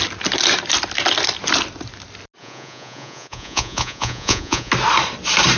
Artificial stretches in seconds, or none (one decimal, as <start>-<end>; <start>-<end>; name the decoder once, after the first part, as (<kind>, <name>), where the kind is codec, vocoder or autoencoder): 2.4-4.7 (vocoder, Vocos)